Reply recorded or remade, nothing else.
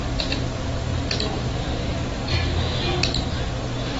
recorded